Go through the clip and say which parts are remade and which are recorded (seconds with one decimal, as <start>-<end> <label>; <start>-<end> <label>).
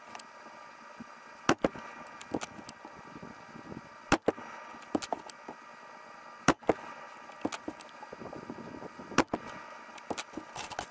0.0-10.9 recorded